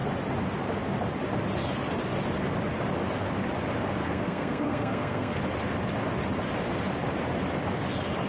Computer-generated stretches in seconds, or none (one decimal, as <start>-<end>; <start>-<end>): 4.0-5.4